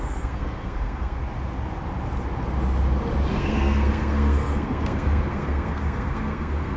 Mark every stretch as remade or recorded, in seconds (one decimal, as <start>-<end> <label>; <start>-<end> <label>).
0.0-1.2 remade; 1.2-3.3 recorded; 3.3-6.8 remade